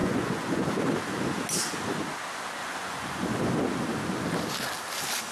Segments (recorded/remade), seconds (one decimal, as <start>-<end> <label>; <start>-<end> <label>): 0.0-0.7 remade; 0.7-2.6 recorded; 2.6-3.5 remade; 3.5-5.3 recorded